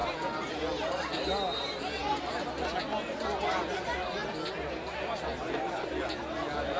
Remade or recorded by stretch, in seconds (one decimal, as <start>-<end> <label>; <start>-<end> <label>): 0.0-6.8 recorded